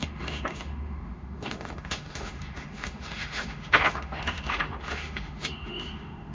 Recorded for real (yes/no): no